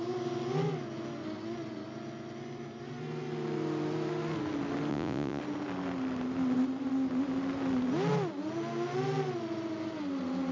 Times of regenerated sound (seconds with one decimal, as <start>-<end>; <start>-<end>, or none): 4.9-5.4